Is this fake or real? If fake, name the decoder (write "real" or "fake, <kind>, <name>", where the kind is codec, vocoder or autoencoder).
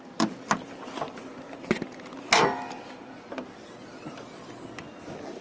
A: real